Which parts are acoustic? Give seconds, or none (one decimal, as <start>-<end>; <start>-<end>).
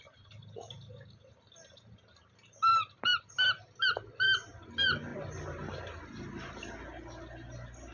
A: 0.0-2.7; 3.3-5.1; 6.8-7.9